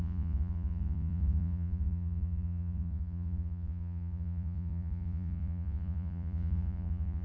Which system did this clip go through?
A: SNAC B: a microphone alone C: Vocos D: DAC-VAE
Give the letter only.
C